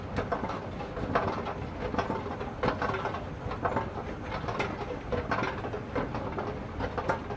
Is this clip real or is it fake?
real